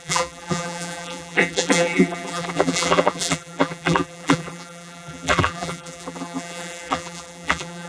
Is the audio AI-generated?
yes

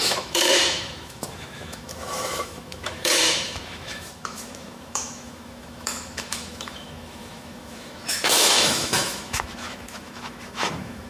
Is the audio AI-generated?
yes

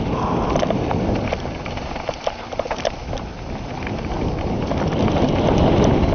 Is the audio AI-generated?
yes